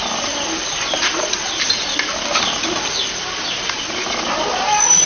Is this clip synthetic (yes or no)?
no